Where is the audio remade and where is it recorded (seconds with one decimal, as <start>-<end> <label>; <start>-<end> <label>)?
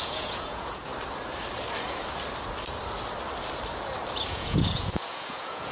0.0-0.9 remade; 0.9-4.3 recorded; 4.3-5.7 remade